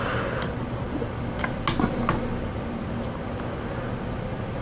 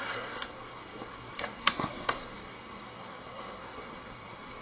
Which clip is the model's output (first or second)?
second